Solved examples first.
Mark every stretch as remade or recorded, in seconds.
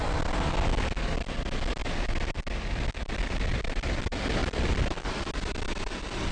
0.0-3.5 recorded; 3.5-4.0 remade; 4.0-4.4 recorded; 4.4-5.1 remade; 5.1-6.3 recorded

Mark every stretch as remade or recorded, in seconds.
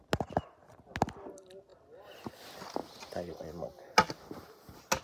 0.0-5.0 recorded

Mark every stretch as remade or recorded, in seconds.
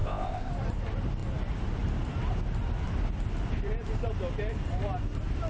0.0-0.5 remade; 0.5-5.5 recorded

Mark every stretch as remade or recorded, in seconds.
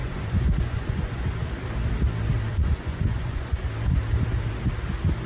0.0-1.2 remade; 1.2-2.5 recorded; 2.5-3.7 remade; 3.7-5.3 recorded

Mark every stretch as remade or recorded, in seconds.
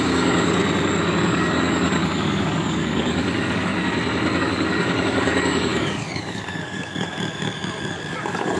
0.0-0.6 remade; 0.6-1.2 recorded; 1.2-3.7 remade; 3.7-4.4 recorded; 4.4-8.6 remade